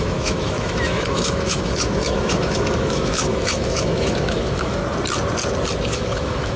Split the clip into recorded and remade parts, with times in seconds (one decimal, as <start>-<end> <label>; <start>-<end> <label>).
0.0-4.8 remade; 4.8-5.9 recorded; 5.9-6.6 remade